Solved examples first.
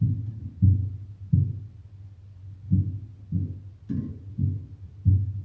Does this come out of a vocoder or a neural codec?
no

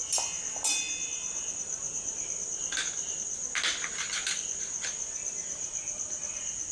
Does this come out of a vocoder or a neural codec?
no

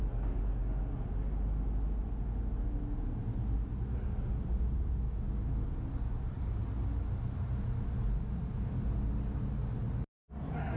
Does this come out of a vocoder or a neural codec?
no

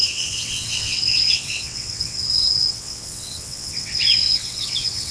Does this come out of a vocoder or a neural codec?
yes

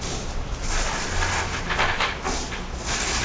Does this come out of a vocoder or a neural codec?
no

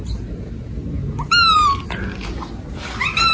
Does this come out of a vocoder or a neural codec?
no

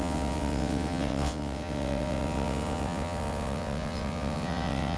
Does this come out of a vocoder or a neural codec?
yes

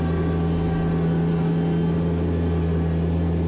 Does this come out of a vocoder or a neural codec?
no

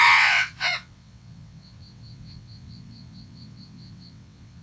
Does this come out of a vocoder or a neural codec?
yes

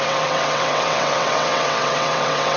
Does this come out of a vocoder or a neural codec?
yes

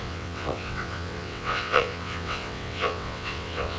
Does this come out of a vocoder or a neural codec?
yes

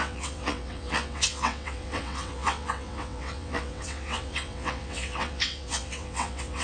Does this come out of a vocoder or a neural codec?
yes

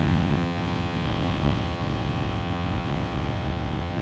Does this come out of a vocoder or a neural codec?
yes